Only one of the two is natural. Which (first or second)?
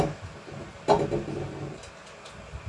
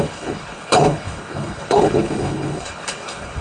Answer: first